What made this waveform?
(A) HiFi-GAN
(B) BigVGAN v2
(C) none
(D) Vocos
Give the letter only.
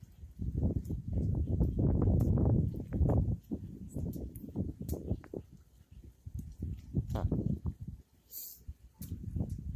C